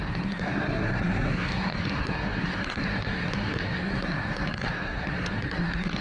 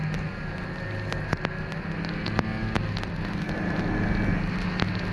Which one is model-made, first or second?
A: first